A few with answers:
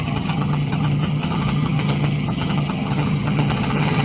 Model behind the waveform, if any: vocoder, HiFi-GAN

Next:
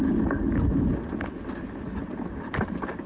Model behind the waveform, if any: none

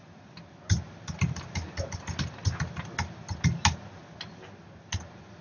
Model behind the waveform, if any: none